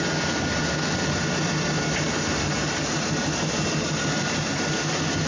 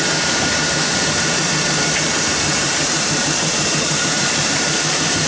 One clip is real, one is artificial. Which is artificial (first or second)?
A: second